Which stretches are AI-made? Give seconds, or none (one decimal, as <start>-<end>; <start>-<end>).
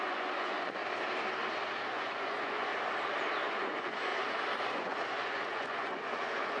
0.0-0.8; 1.9-2.7; 3.5-4.1; 4.7-6.6